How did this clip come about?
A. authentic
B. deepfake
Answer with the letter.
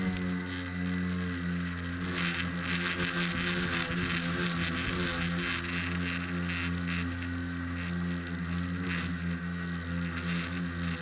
A